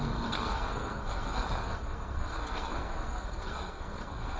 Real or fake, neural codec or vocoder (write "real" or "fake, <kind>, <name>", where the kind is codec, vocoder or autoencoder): fake, codec, SNAC